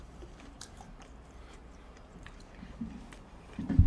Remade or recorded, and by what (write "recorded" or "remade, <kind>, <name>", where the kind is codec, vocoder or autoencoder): remade, vocoder, BigVGAN v2